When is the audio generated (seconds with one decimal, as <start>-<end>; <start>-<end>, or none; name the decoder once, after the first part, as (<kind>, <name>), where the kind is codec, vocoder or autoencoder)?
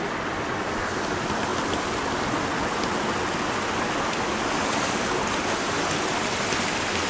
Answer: none